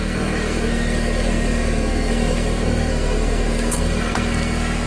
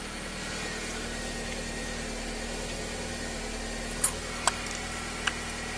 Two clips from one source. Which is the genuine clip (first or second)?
second